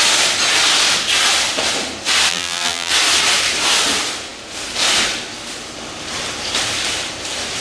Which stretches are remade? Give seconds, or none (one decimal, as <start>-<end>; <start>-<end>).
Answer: 2.3-2.9